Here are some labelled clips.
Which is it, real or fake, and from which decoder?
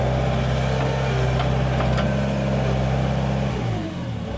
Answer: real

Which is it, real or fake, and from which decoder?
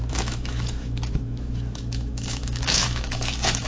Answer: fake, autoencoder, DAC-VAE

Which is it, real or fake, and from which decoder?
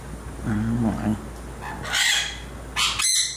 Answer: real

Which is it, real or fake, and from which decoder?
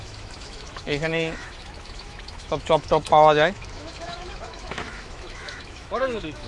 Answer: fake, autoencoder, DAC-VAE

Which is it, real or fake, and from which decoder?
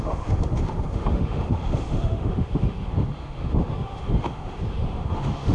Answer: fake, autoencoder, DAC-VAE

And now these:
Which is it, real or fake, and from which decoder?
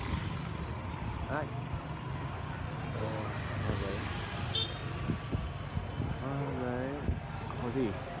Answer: real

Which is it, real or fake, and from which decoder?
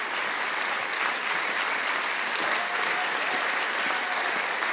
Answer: real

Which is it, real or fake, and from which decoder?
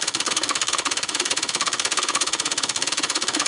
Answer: fake, autoencoder, DAC-VAE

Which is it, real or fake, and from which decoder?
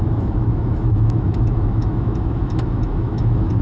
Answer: fake, autoencoder, DAC-VAE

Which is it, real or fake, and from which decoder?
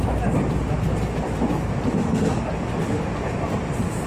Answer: real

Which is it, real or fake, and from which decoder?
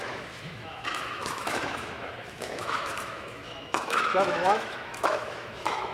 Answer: fake, autoencoder, DAC-VAE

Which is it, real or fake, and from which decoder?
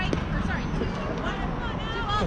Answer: real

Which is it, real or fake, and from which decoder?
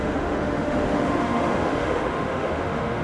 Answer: fake, autoencoder, DAC-VAE